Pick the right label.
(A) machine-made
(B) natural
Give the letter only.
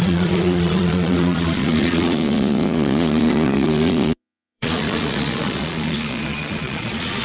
A